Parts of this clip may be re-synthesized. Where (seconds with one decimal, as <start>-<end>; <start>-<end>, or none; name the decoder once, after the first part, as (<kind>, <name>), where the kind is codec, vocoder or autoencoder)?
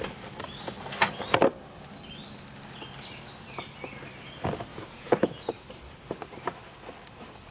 4.7-5.5 (vocoder, Vocos)